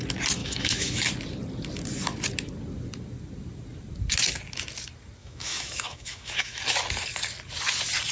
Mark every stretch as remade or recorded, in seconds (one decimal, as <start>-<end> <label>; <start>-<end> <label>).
0.0-0.4 recorded; 0.4-1.1 remade; 1.1-5.2 recorded; 5.2-6.6 remade; 6.6-8.1 recorded